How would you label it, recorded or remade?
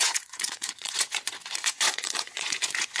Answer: remade